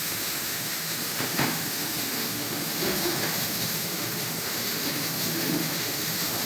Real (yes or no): no